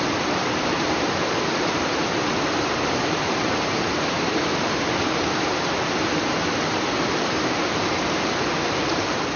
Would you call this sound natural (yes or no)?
no